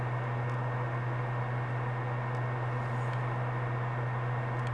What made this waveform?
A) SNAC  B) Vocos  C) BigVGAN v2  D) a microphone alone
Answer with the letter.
D